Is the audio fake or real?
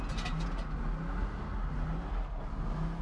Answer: real